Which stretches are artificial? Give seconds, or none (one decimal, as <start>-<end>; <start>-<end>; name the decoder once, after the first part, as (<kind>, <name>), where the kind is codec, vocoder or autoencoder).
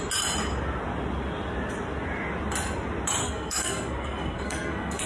3.2-5.1 (codec, SNAC)